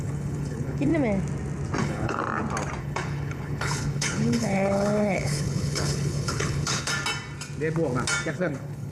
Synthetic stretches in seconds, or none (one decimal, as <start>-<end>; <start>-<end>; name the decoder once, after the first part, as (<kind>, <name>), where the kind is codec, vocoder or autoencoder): 0.0-0.9 (codec, HILCodec); 1.8-2.2; 2.8-6.9; 8.3-8.9